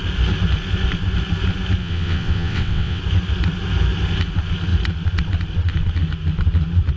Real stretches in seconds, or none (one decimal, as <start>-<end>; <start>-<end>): 0.0-1.8; 3.0-7.0